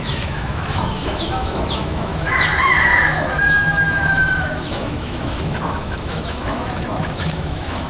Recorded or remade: remade